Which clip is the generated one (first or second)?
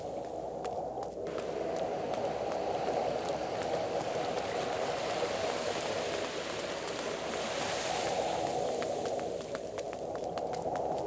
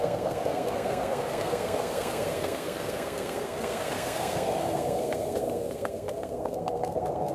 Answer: second